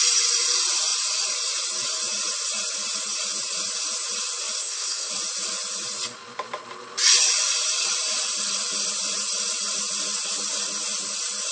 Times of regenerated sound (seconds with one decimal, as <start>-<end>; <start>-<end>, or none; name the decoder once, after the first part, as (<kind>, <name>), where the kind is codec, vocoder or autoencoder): 4.6-5.1 (codec, SNAC)